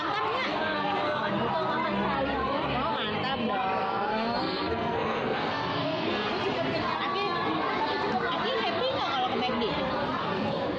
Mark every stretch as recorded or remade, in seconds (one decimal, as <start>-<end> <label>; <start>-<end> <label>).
0.0-0.5 recorded; 0.5-1.3 remade; 1.3-3.8 recorded; 3.8-6.3 remade; 6.3-10.2 recorded; 10.2-10.8 remade